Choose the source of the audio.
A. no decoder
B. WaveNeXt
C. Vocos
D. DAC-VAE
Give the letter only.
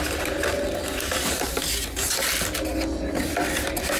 A